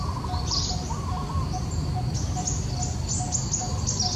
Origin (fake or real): real